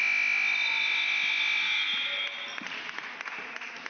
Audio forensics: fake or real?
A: real